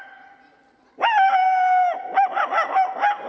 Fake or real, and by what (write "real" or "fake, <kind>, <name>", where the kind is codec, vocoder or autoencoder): real